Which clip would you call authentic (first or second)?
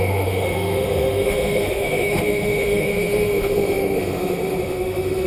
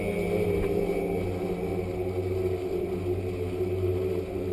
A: second